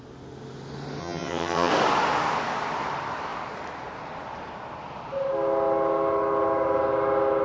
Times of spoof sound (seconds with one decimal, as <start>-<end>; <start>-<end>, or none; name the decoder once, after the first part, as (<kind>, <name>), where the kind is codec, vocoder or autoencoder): 1.0-1.7 (vocoder, HiFi-GAN)